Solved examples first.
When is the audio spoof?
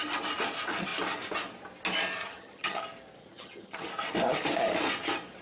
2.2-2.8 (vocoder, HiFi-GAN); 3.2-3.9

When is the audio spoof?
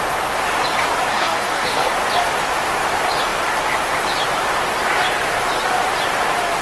1.1-1.9 (codec, SNAC)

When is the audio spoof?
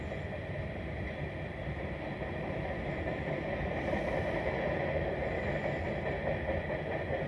1.6-5.9 (vocoder, BigVGAN v2)